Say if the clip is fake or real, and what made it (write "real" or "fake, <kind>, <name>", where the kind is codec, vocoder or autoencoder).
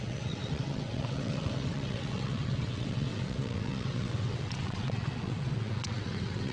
fake, vocoder, WaveNeXt